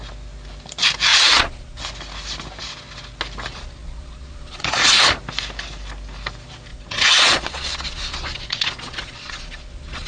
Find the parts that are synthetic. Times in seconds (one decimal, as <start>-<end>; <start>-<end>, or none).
1.1-1.8; 3.5-5.0; 6.7-10.1

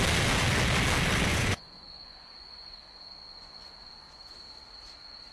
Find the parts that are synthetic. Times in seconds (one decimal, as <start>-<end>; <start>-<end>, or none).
1.3-4.4

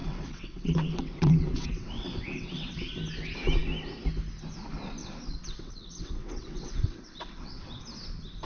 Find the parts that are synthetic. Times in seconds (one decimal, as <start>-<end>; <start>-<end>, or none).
0.0-2.9; 5.0-7.8

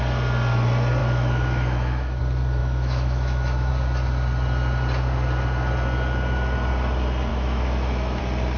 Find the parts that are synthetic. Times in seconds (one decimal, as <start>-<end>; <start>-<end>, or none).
1.0-2.2; 2.6-3.7; 7.3-8.2

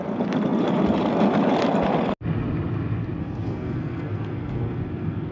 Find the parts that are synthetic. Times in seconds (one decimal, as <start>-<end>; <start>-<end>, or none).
3.2-5.3